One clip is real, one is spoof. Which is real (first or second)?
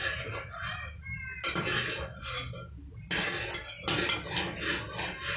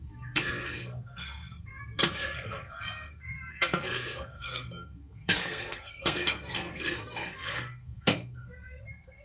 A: first